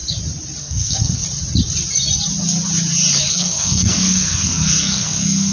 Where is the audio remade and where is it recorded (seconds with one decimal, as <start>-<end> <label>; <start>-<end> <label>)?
0.0-0.6 recorded; 0.6-1.2 remade; 1.2-3.3 recorded; 3.3-5.5 remade